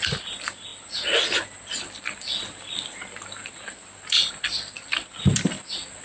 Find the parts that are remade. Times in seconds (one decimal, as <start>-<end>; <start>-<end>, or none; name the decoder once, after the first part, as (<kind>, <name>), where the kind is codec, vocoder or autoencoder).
none